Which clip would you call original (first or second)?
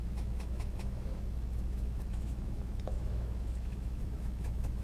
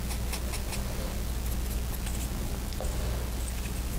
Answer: second